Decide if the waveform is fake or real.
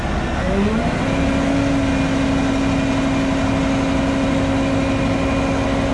real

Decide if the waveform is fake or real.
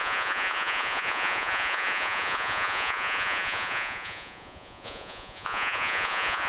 fake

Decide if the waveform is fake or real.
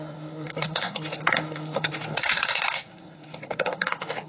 fake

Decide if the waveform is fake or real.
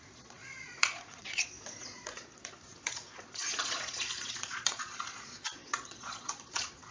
fake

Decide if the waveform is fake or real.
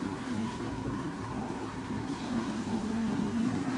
fake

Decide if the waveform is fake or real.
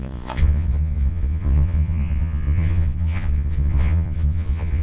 fake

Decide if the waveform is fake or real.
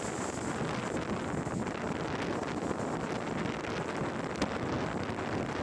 real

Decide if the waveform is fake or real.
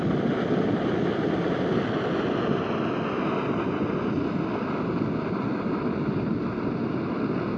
real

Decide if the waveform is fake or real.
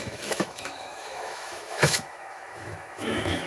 fake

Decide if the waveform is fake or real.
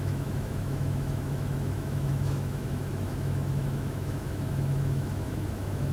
fake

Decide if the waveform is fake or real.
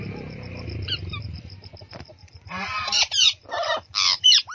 fake